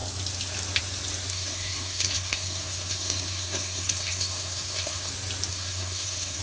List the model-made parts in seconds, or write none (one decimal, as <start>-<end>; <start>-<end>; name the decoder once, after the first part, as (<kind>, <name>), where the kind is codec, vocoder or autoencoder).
1.3-5.1 (codec, SNAC); 5.5-6.4